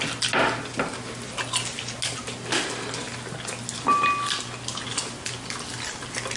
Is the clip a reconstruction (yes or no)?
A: no